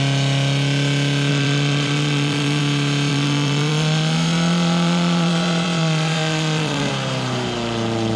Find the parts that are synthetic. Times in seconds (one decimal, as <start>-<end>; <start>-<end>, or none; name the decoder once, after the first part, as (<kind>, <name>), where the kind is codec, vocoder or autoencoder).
1.3-2.6 (vocoder, Vocos); 3.1-6.9